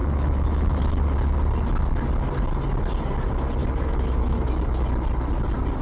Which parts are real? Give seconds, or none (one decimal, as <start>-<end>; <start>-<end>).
0.9-3.6; 4.5-5.8